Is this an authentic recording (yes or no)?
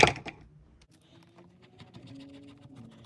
yes